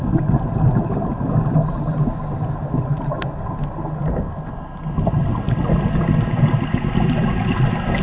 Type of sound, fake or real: real